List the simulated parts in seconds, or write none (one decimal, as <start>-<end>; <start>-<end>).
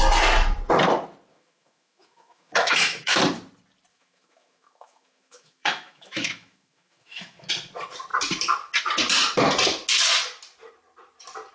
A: 1.3-3.2; 3.9-7.5